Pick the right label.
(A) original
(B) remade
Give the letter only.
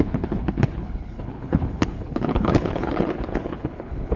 B